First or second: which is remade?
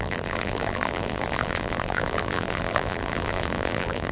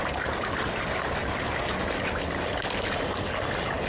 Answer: first